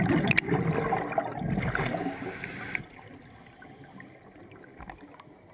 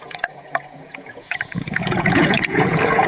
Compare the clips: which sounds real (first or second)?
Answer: first